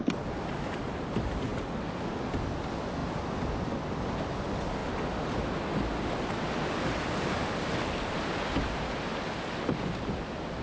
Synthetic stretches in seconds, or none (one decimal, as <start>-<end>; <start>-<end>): none